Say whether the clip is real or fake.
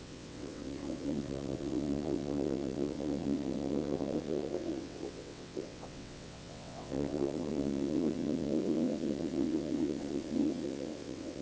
fake